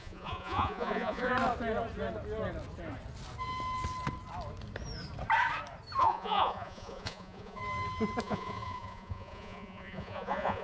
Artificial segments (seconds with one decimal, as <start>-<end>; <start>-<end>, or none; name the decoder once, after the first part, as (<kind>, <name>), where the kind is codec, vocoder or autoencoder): 0.0-1.3 (vocoder, Vocos); 6.0-7.6; 8.2-10.6